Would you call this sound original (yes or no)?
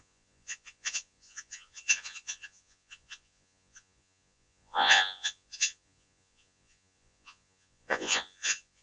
no